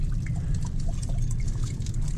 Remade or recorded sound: remade